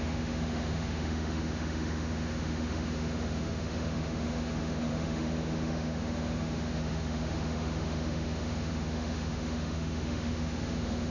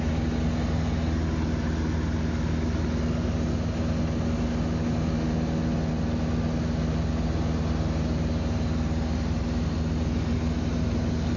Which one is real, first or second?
second